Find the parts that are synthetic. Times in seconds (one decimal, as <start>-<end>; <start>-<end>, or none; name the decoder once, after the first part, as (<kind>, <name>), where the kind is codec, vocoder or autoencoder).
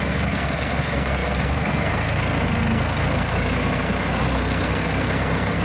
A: 0.0-5.6 (codec, SNAC)